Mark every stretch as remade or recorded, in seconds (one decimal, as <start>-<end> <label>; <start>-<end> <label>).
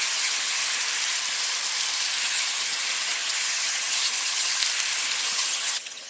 0.0-0.6 remade; 0.6-2.2 recorded; 2.2-4.6 remade; 4.6-5.2 recorded; 5.2-6.1 remade